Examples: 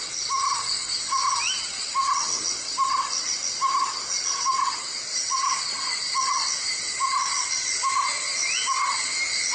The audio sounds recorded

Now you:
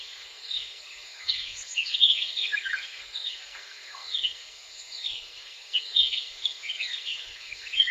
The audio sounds remade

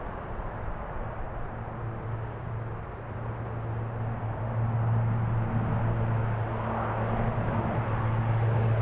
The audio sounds recorded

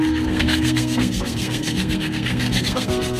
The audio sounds remade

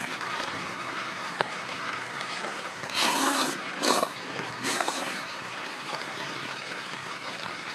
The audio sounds remade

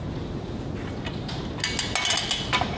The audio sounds recorded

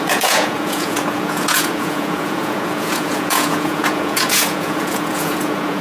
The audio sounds remade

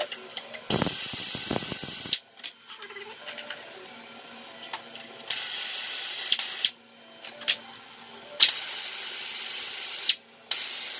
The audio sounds recorded